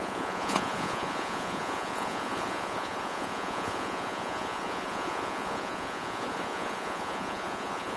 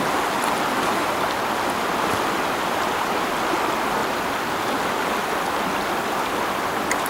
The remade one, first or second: first